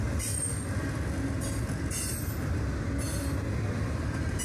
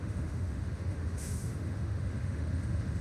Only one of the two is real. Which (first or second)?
first